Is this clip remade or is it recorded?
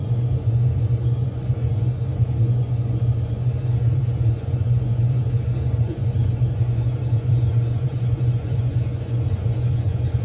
remade